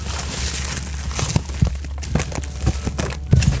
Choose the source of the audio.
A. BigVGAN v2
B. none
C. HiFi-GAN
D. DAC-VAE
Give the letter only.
B